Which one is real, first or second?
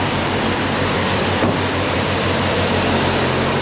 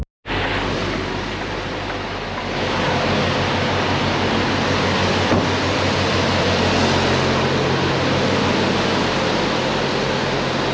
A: second